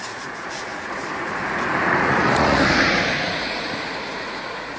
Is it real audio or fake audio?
fake